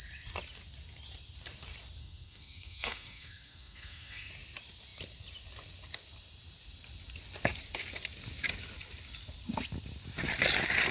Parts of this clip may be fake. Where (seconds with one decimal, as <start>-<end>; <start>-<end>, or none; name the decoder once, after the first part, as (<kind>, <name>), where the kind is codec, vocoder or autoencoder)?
2.0-4.3 (codec, SNAC)